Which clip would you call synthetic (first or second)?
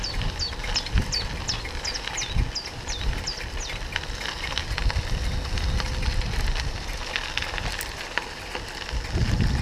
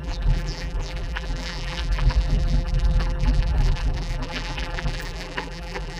second